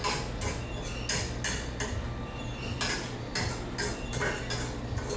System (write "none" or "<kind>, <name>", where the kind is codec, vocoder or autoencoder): none